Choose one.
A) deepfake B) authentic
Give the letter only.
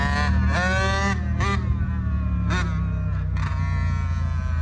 B